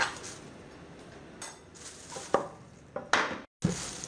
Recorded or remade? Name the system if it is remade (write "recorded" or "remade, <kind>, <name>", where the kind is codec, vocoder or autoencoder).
recorded